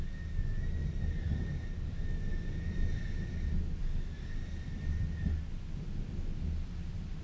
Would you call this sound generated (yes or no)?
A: no